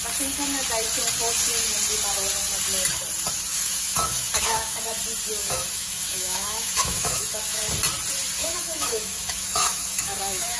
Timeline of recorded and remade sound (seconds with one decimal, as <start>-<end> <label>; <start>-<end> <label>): 0.0-3.5 recorded; 3.5-4.8 remade; 4.8-5.4 recorded; 5.4-7.6 remade; 7.6-8.4 recorded; 8.4-10.6 remade